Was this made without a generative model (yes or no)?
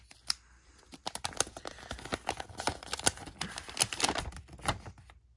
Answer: yes